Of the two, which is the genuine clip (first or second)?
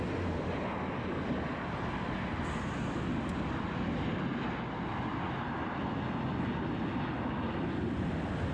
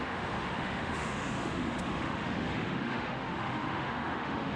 first